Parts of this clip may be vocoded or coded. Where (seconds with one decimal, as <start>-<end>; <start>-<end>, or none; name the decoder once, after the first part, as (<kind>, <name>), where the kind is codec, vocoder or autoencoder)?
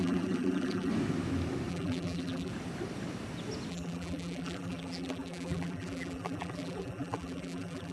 0.0-0.9 (vocoder, BigVGAN v2); 1.7-2.5; 3.7-7.9